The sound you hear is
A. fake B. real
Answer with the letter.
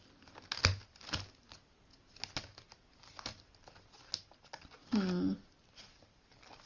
B